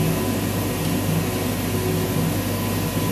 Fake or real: real